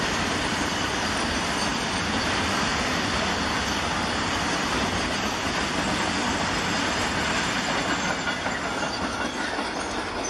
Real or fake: real